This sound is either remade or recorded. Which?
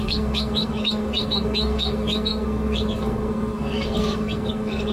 remade